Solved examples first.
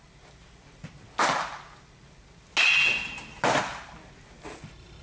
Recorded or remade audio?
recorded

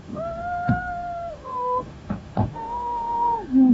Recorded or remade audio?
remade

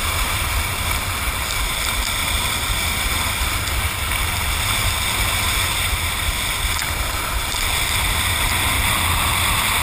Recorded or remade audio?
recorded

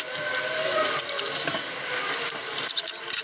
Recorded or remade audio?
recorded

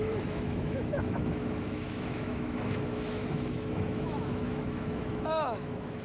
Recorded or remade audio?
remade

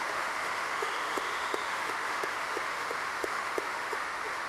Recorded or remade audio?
remade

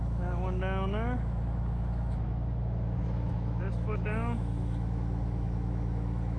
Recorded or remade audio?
remade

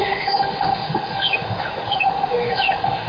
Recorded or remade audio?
remade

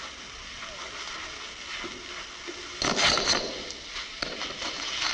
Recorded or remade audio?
recorded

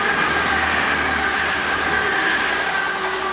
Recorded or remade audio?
recorded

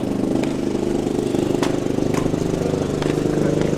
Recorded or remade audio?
recorded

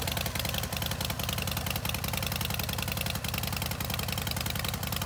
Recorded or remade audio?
recorded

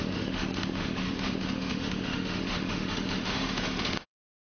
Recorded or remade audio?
remade